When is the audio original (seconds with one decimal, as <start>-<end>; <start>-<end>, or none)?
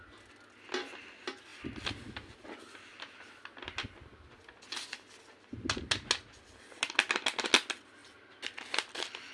0.0-9.3